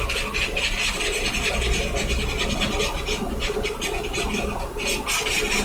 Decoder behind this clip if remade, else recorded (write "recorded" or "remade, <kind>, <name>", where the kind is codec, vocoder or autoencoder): recorded